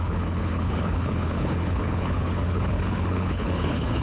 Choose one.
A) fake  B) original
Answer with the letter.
A